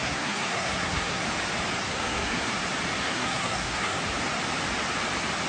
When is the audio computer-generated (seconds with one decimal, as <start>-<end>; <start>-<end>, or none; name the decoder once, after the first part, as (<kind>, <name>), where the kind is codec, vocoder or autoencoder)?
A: 0.0-1.2 (codec, SNAC); 1.8-2.5; 3.0-4.0